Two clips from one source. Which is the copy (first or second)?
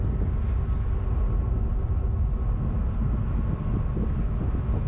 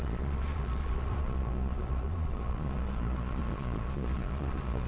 second